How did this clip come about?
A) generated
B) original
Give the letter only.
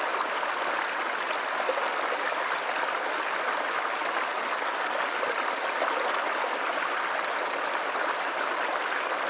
B